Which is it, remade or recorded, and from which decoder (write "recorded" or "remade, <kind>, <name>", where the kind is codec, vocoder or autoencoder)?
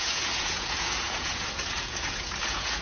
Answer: remade, vocoder, Vocos